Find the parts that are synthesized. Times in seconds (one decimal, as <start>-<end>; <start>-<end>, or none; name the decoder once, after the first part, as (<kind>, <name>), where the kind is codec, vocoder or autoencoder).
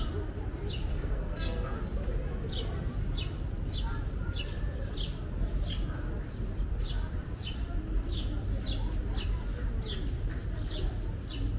0.9-1.8 (codec, SNAC)